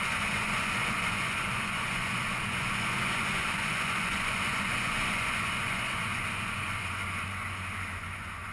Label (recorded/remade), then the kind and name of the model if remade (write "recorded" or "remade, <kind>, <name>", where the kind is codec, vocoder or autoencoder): remade, vocoder, Vocos